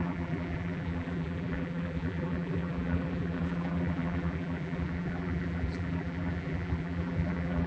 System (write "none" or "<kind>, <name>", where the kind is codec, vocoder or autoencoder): vocoder, BigVGAN v2